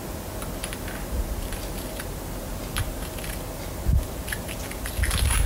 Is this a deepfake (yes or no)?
no